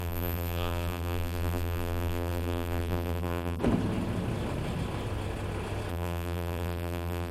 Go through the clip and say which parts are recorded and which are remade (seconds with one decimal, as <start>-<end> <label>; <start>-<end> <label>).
0.0-3.6 remade; 3.6-5.9 recorded; 5.9-7.3 remade